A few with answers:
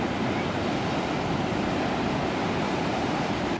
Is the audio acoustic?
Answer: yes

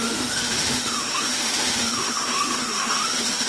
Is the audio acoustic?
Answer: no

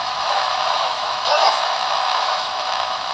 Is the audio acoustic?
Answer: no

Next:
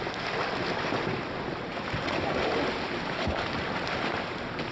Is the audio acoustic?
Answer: yes